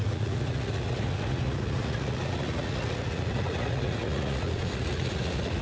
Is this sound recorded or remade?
remade